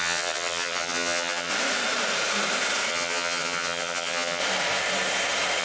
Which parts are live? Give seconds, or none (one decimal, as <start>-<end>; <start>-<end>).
1.5-2.9; 4.4-5.6